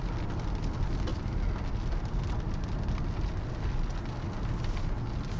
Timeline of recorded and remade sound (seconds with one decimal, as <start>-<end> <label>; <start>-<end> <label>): 0.0-5.4 recorded